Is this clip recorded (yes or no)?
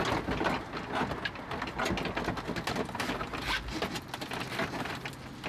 yes